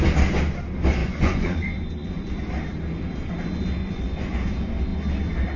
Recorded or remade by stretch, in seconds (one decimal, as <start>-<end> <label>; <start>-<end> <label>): 0.0-1.0 recorded; 1.0-2.3 remade; 2.3-3.8 recorded; 3.8-4.3 remade; 4.3-5.6 recorded